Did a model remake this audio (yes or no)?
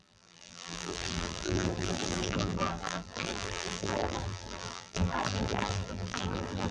yes